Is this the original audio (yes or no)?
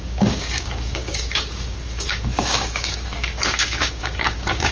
no